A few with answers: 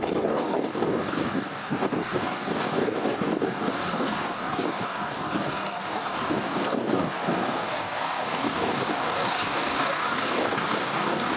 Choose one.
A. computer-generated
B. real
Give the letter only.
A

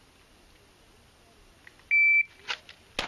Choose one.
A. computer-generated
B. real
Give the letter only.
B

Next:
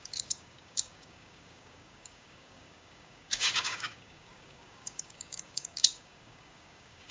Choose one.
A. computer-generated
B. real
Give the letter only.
A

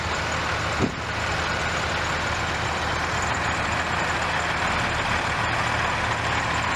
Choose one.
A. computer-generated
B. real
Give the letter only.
B